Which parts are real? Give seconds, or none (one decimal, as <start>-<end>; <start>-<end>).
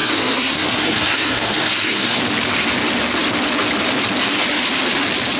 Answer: 2.2-5.4